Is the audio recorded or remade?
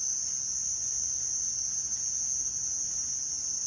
recorded